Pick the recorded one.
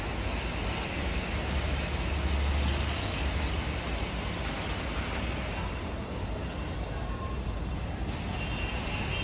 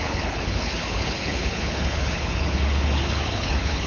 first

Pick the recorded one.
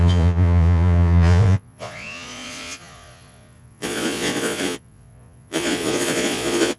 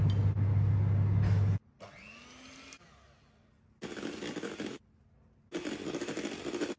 second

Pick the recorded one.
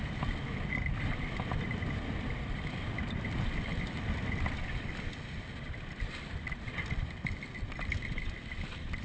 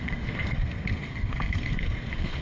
first